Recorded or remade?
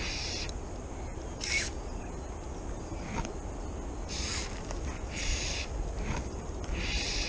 recorded